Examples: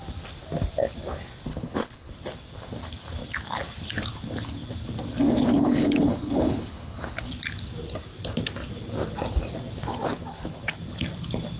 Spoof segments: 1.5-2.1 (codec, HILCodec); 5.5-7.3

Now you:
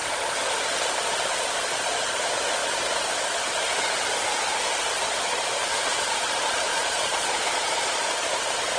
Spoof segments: 6.7-8.0 (vocoder, Vocos)

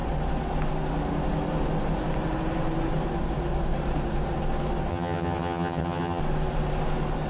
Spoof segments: 4.9-6.2 (vocoder, HiFi-GAN)

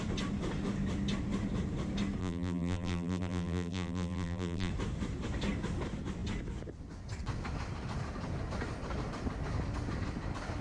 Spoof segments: 2.2-4.7 (vocoder, BigVGAN v2)

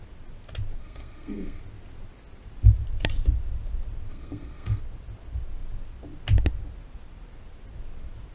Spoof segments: 0.8-1.6 (codec, SNAC); 4.1-4.8

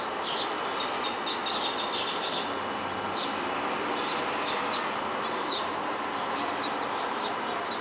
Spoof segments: none

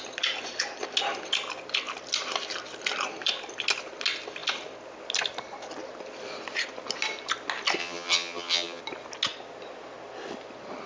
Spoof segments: 7.8-8.8 (vocoder, HiFi-GAN)